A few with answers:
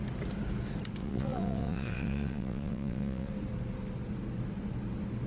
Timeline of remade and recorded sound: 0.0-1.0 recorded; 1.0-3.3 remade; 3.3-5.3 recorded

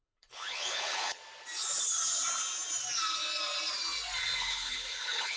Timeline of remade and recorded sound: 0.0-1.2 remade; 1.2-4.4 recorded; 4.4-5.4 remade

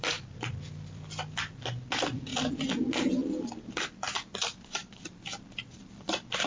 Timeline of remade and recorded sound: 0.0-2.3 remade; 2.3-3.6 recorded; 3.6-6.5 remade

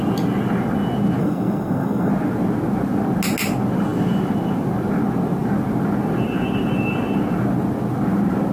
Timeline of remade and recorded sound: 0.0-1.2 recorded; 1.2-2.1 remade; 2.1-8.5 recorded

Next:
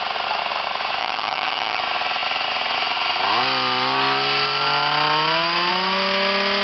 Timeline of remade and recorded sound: 0.0-1.0 recorded; 1.0-1.8 remade; 1.8-6.6 recorded

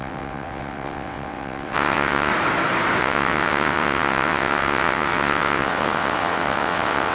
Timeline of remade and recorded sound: 0.0-2.3 remade; 2.3-3.0 recorded; 3.0-7.1 remade

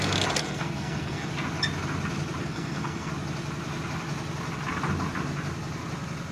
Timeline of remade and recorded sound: 0.0-0.4 recorded; 0.4-1.3 remade; 1.3-2.4 recorded; 2.4-3.1 remade; 3.1-6.3 recorded